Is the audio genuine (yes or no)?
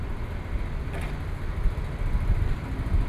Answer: yes